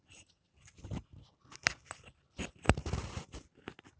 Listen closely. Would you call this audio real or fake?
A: real